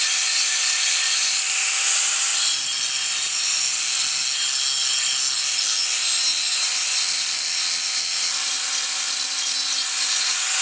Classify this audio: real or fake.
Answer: real